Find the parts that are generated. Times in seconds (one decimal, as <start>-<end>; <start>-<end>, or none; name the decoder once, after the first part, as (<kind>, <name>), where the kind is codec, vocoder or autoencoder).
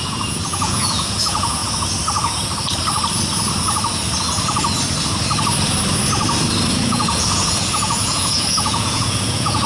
0.0-1.6 (vocoder, Vocos); 6.7-9.7